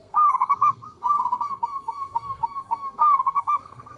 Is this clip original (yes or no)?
no